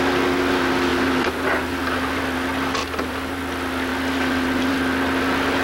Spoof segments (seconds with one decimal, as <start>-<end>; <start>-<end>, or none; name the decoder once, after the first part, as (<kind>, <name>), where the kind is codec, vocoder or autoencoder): 0.9-2.2 (vocoder, BigVGAN v2); 2.8-3.4

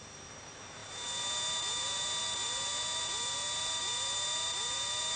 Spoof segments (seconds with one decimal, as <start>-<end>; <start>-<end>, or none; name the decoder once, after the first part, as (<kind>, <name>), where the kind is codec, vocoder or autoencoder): 0.0-5.2 (vocoder, BigVGAN v2)

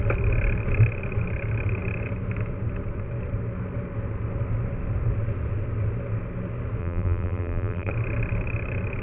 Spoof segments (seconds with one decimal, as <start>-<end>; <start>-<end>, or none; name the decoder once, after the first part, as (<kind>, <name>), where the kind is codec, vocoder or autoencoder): 6.8-7.9 (vocoder, BigVGAN v2)

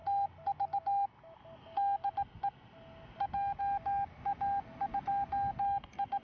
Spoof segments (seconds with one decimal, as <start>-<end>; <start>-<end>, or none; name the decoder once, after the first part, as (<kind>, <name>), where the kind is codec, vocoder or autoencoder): none

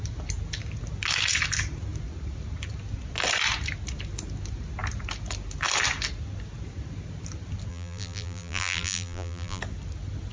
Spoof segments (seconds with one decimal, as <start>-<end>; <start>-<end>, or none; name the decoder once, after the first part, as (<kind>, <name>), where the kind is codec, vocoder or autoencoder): 7.7-9.6 (vocoder, BigVGAN v2)

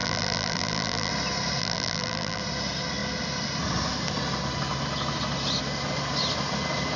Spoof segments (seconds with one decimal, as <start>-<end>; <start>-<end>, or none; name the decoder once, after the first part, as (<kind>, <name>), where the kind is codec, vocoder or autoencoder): 0.0-1.1 (vocoder, BigVGAN v2); 1.6-2.4